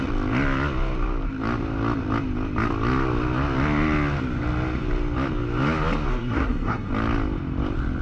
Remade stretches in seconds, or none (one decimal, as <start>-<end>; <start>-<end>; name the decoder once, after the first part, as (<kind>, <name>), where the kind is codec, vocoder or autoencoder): 6.1-6.9 (codec, SNAC)